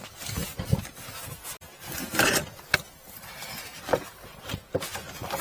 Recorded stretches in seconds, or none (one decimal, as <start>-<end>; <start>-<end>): 0.0-3.7; 4.4-5.4